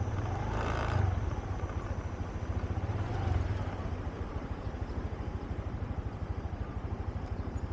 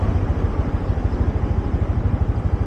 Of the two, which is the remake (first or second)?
first